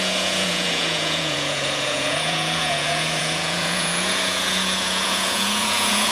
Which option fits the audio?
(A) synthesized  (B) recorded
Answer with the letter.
A